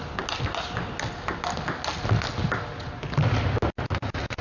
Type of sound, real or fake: real